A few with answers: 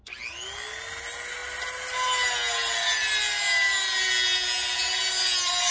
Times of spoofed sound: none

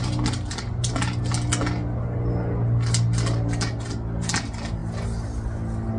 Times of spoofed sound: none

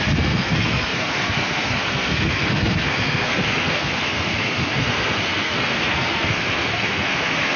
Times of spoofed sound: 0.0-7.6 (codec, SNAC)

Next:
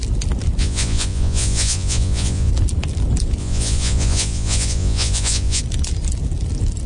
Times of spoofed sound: 0.6-2.5 (vocoder, Vocos); 3.4-5.6

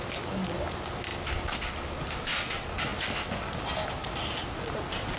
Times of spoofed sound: none

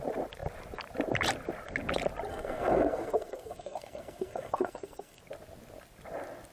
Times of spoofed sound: 2.3-5.2 (codec, SNAC)

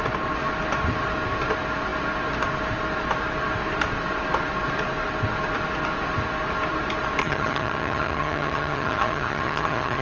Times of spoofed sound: 7.2-10.0 (vocoder, HiFi-GAN)